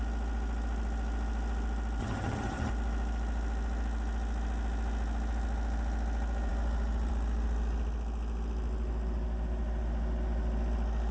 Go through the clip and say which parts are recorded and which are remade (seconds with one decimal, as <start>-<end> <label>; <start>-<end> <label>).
0.0-2.0 recorded; 2.0-2.7 remade; 2.7-11.1 recorded